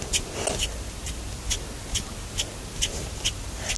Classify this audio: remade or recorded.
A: recorded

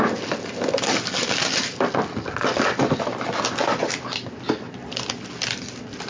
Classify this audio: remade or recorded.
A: recorded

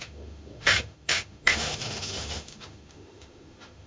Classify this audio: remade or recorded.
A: remade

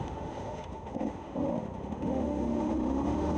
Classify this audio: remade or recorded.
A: remade